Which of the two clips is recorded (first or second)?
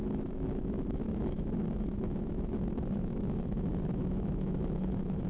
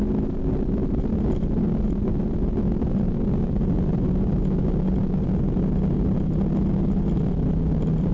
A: second